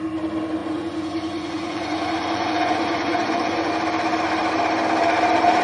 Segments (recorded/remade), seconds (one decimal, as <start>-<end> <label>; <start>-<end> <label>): 0.0-0.6 recorded; 0.6-3.7 remade; 3.7-5.6 recorded